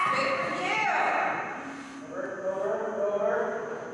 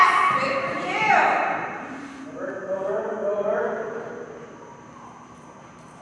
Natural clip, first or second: first